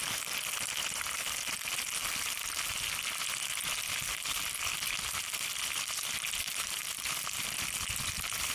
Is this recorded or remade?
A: recorded